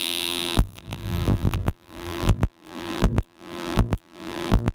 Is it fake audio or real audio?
fake